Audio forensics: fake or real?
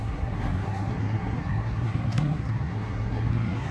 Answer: fake